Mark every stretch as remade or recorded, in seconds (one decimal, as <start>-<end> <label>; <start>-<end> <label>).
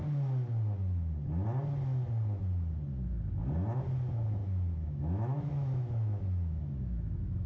0.0-4.4 recorded; 4.4-7.5 remade